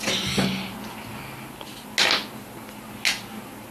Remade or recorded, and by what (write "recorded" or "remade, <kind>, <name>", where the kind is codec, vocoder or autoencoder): recorded